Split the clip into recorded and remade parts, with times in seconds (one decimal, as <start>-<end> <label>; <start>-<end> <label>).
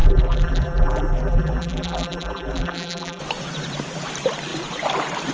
0.0-3.2 remade; 3.2-5.3 recorded